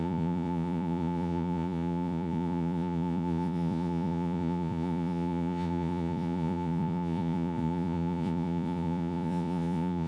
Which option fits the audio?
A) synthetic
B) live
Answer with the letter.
A